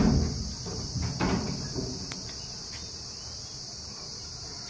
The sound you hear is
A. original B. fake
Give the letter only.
A